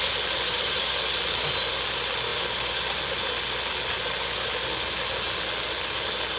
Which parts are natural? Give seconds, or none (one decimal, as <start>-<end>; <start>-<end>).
0.0-6.4